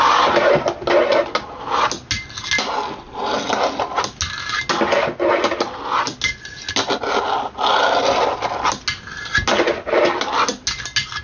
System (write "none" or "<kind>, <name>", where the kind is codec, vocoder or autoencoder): none